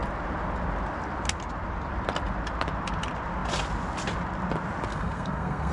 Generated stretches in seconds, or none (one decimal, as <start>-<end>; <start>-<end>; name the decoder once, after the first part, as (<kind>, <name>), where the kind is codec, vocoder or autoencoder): 4.9-5.7 (codec, SNAC)

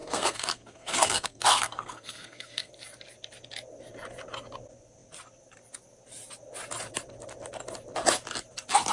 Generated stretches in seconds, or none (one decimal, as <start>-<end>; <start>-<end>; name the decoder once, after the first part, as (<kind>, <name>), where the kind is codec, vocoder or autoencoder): 0.0-2.7 (codec, SNAC)

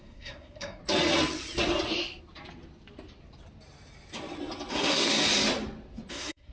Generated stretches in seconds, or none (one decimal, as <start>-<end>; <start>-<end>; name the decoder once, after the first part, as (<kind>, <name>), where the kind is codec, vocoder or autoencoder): 0.0-0.8 (codec, SNAC); 4.7-5.2; 6.1-6.5

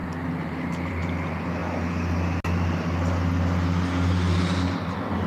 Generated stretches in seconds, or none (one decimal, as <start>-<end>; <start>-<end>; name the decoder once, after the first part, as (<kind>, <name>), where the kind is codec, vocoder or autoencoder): none